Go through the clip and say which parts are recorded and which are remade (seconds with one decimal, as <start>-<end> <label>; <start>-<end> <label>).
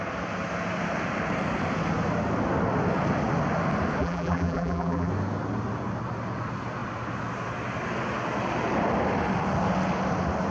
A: 0.0-4.0 recorded; 4.0-5.1 remade; 5.1-10.5 recorded